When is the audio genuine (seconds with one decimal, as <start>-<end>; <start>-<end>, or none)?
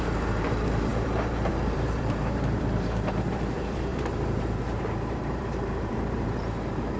none